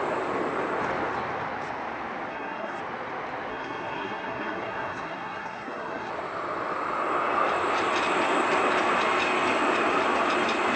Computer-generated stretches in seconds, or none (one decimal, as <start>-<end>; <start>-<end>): 2.3-2.8; 3.5-6.1